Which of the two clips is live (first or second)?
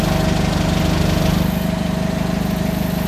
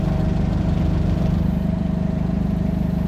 first